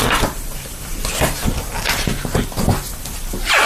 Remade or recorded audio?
recorded